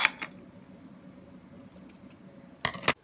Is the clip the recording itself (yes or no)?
yes